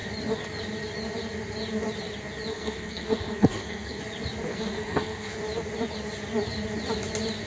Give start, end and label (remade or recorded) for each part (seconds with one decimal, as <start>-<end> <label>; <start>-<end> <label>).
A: 0.0-2.5 recorded; 2.5-4.0 remade; 4.0-4.5 recorded; 4.5-5.4 remade; 5.4-7.5 recorded